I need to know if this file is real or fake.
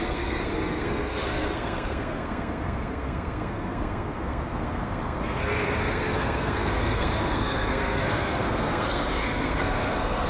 fake